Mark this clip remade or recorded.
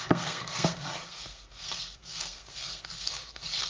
remade